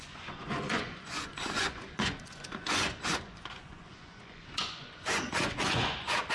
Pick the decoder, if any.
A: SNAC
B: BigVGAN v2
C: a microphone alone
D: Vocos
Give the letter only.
D